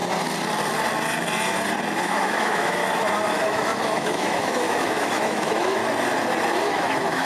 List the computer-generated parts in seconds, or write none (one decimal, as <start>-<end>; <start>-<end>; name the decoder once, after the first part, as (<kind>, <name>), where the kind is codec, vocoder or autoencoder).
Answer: 2.0-2.8 (autoencoder, DAC-VAE); 3.3-5.8; 6.6-7.2